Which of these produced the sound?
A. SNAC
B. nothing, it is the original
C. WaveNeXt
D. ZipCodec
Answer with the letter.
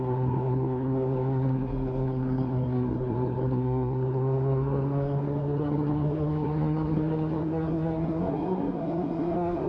A